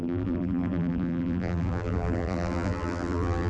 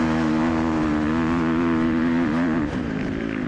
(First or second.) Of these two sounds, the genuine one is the second